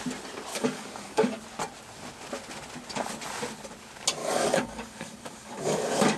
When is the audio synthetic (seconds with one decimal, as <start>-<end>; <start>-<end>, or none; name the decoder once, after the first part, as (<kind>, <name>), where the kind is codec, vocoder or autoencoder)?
0.5-1.4 (codec, DAC); 4.2-6.2